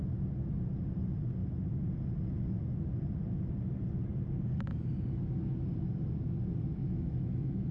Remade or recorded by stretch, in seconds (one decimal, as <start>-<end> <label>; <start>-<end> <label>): 0.0-6.8 recorded; 6.8-7.7 remade